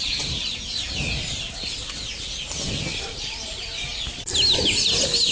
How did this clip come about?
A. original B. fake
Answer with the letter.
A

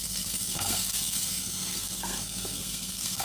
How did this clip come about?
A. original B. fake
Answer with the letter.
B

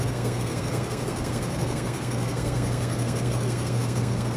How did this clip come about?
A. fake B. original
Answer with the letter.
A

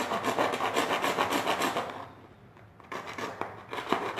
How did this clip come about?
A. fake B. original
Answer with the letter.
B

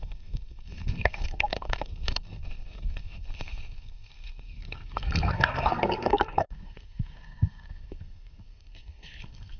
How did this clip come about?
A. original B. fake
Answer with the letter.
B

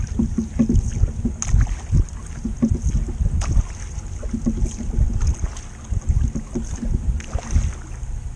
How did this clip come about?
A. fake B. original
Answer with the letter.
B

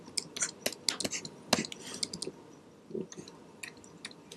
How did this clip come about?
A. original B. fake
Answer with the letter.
A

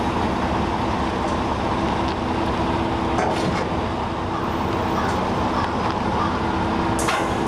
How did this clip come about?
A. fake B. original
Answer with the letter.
B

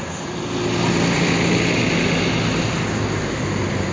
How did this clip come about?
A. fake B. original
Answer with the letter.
B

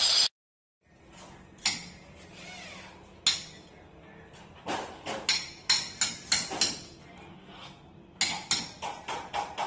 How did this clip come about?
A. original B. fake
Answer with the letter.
A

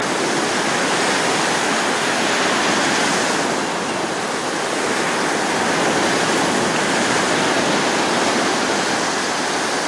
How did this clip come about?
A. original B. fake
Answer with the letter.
A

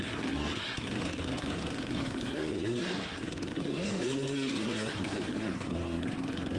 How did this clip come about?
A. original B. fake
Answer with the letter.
B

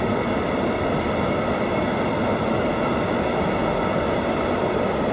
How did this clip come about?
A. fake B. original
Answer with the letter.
B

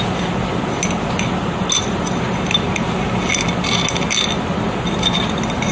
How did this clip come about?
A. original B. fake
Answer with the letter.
A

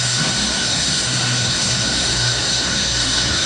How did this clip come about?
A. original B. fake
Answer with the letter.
B